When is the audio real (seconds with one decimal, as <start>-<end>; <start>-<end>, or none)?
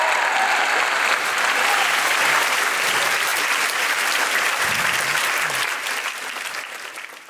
none